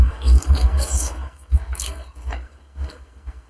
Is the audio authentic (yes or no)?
no